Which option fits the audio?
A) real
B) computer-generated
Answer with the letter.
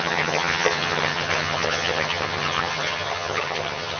B